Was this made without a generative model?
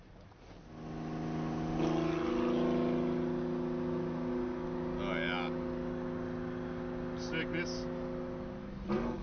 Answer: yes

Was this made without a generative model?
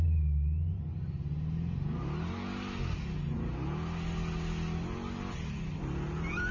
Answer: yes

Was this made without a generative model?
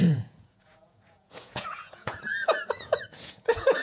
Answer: no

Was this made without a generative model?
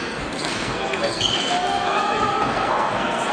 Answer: no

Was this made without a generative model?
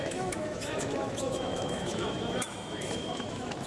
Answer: no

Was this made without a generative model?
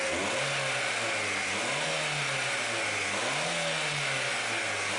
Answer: yes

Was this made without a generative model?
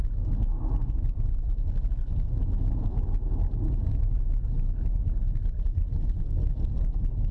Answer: yes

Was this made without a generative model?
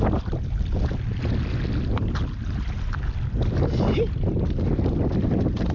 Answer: yes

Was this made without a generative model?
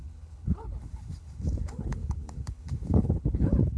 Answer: no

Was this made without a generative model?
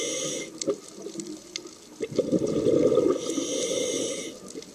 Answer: yes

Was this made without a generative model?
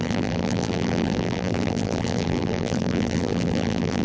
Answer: no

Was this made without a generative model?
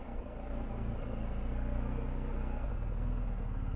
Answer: no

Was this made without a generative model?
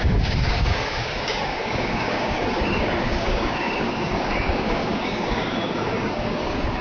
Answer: no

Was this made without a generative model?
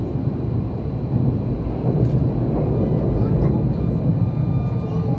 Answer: yes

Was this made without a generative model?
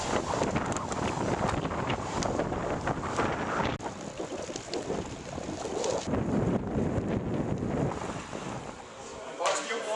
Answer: yes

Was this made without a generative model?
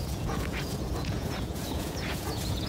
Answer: no